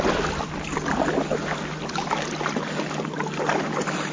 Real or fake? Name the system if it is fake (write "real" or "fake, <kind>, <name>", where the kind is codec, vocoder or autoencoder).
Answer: real